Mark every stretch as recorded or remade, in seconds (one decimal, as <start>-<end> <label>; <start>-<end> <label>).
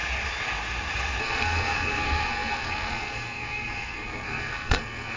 0.0-1.2 recorded; 1.2-5.2 remade